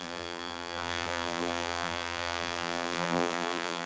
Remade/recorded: remade